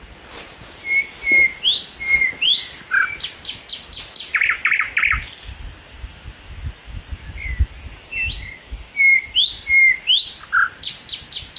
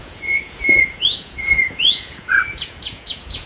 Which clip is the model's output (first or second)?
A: second